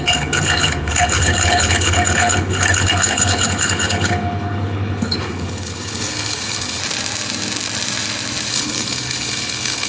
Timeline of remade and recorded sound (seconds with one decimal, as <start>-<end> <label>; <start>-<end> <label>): 0.0-6.8 remade; 6.8-8.5 recorded; 8.5-9.9 remade